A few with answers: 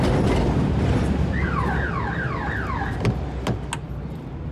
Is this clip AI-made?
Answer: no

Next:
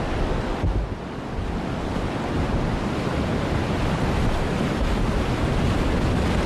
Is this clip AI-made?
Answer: no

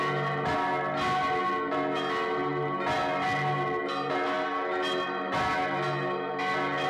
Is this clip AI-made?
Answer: no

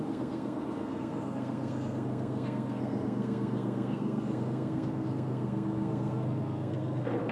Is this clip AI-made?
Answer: yes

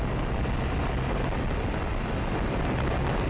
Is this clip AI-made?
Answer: no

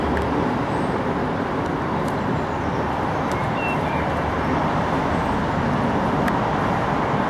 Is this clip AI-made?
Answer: no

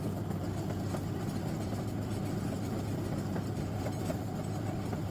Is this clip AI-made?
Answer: no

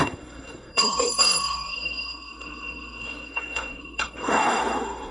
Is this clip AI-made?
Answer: yes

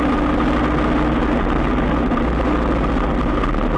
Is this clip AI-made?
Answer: no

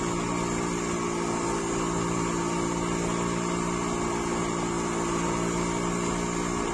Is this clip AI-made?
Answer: no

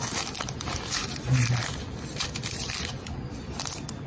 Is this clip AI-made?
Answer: no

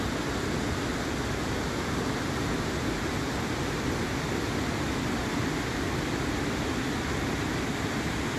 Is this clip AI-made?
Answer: no